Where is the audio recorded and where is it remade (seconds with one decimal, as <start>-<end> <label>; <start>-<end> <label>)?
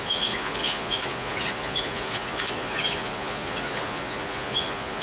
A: 0.0-5.0 remade